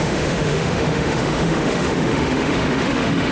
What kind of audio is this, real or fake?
fake